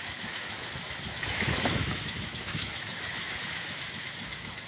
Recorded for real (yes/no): no